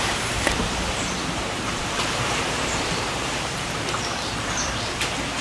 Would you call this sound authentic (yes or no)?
no